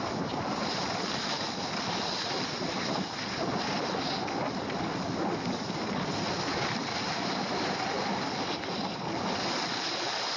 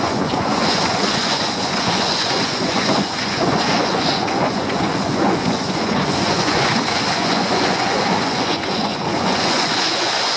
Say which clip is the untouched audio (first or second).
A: first